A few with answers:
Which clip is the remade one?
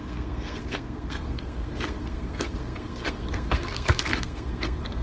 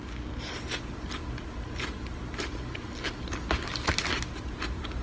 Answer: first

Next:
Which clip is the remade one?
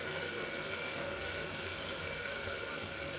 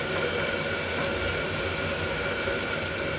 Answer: first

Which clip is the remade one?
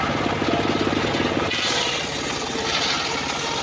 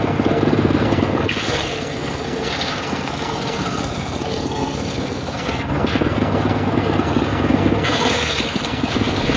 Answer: second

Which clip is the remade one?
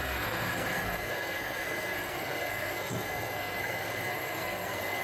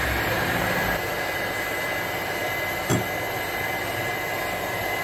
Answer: first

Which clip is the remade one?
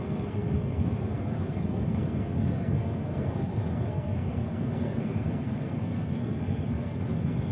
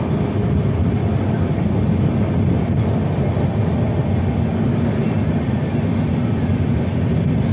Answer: first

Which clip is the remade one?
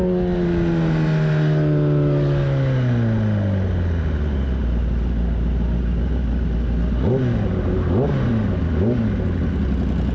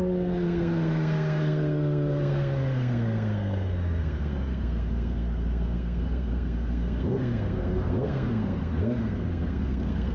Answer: second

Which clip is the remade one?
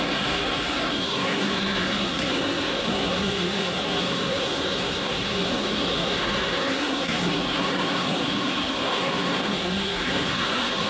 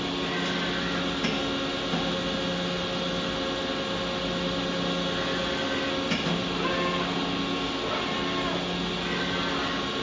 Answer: first